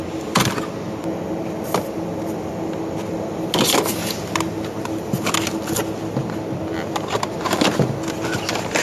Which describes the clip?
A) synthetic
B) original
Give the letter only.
B